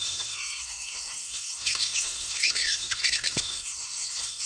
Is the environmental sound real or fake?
fake